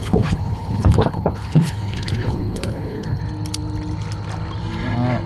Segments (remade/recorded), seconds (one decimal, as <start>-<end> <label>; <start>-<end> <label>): 0.0-3.2 remade; 3.2-5.3 recorded